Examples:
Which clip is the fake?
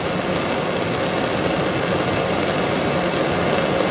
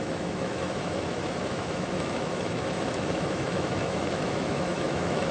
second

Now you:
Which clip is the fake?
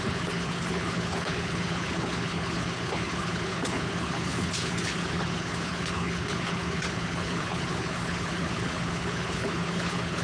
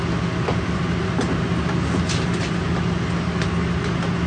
first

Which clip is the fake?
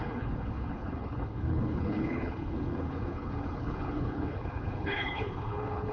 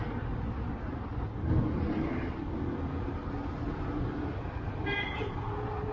first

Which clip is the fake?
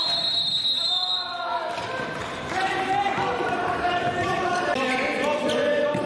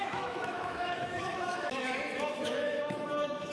second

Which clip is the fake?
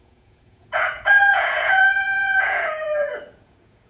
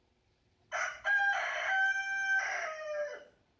first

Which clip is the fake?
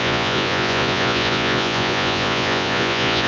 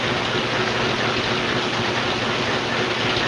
first